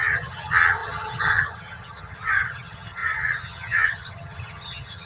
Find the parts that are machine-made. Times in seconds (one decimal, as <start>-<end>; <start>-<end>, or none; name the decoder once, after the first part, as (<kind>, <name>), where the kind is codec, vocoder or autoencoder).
0.0-5.1 (vocoder, HiFi-GAN)